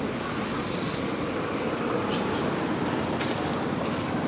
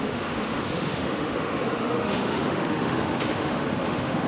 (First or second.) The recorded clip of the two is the first